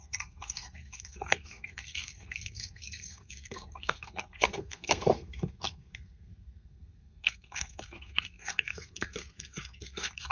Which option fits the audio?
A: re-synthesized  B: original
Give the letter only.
A